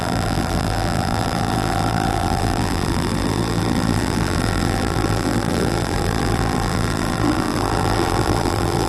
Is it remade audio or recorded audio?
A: remade